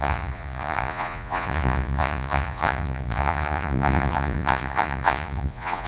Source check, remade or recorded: remade